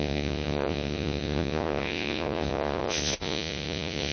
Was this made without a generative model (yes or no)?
no